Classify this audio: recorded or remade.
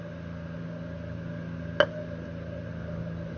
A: recorded